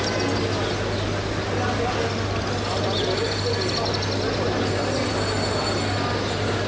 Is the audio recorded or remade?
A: recorded